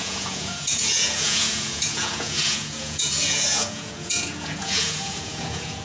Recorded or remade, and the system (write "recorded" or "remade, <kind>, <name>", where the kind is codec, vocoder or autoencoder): remade, vocoder, Vocos